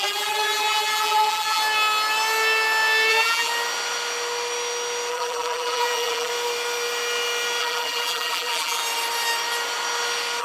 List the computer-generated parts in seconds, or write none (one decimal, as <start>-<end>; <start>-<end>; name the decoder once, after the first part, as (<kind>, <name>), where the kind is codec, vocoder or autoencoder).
0.0-1.6 (vocoder, BigVGAN v2); 3.1-3.5; 5.1-6.3; 7.6-8.8